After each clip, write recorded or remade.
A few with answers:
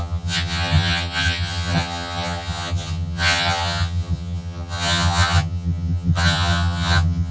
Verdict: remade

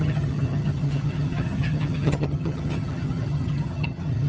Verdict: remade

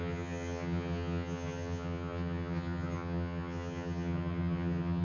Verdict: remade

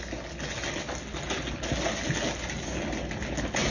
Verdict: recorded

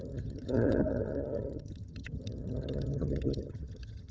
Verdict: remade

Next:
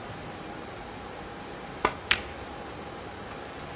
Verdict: recorded